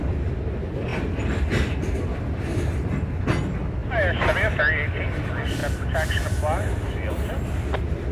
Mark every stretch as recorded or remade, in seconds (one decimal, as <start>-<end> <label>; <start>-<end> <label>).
0.0-8.1 recorded